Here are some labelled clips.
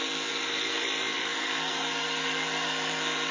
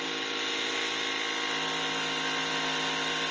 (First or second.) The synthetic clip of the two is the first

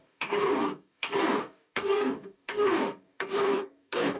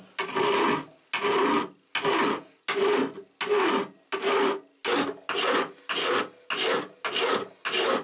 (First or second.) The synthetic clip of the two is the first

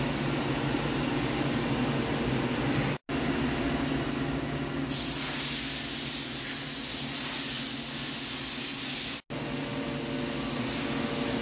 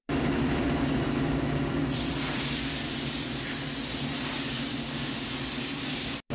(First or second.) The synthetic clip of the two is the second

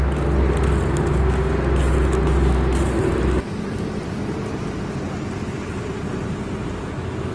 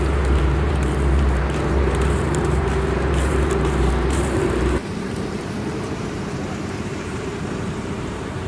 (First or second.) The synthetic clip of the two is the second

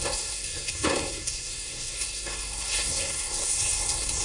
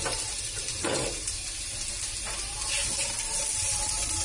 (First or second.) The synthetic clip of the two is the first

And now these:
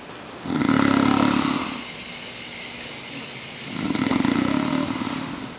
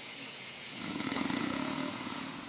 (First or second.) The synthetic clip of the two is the second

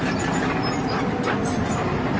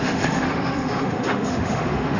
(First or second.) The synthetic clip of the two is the second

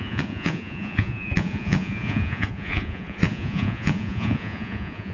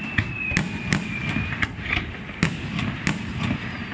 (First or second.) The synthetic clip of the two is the first